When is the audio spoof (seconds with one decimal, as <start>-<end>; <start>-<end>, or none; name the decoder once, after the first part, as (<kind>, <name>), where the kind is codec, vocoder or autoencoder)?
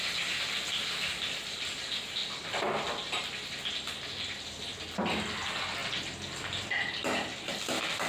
none